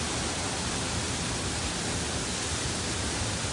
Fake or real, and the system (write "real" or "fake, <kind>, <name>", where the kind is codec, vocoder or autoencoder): real